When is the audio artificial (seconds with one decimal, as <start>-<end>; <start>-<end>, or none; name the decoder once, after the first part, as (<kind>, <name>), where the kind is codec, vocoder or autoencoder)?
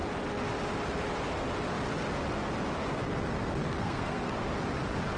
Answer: 3.6-4.3 (codec, SNAC)